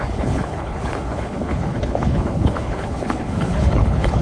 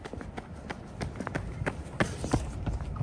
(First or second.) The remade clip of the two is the first